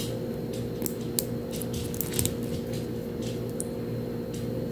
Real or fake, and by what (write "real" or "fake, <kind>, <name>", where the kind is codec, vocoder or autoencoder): real